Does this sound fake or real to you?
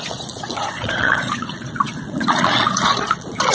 fake